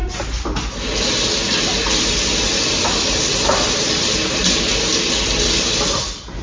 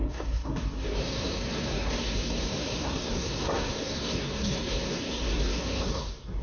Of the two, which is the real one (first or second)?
first